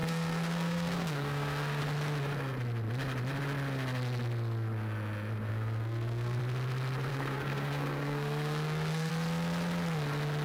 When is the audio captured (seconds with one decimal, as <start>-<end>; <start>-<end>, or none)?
1.8-5.5; 6.4-7.1; 9.1-10.4